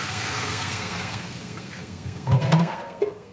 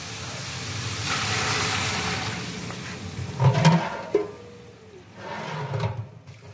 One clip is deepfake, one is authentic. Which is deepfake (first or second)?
first